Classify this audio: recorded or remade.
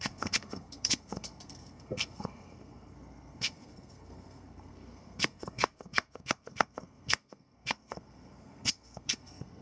remade